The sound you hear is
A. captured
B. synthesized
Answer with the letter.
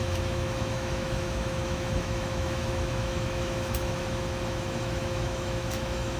B